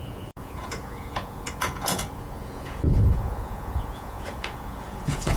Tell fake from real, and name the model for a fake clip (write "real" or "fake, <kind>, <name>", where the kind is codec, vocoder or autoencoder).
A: fake, vocoder, Vocos